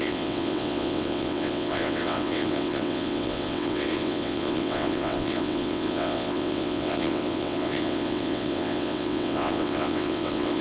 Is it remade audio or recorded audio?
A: remade